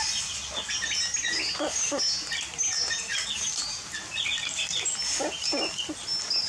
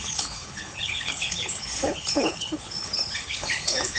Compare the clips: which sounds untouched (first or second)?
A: first